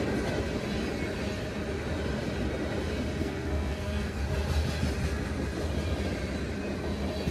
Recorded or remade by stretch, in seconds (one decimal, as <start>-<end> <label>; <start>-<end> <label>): 0.0-3.2 recorded; 3.2-4.2 remade; 4.2-7.3 recorded